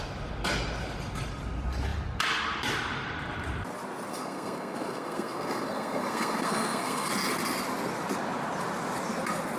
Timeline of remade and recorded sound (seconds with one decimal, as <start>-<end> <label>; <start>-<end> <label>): 0.0-4.1 recorded; 4.1-7.1 remade; 7.1-9.6 recorded